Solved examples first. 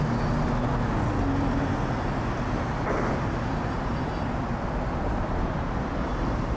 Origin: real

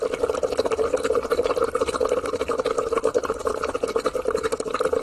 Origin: real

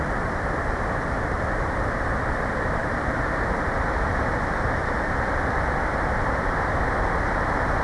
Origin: fake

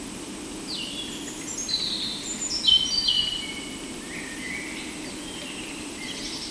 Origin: real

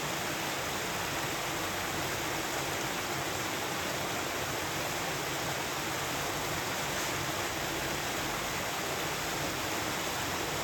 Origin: real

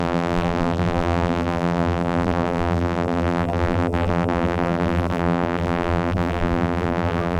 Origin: fake